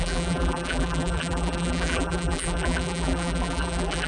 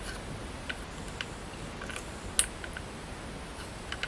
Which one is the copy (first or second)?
first